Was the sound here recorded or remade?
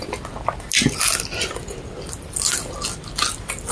recorded